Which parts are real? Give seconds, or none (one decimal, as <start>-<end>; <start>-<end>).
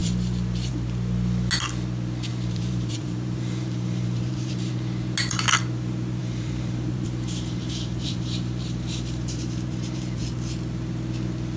0.7-2.3; 4.7-6.2; 10.2-11.6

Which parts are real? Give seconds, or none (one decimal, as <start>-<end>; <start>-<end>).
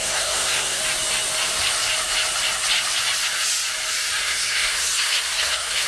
0.8-4.2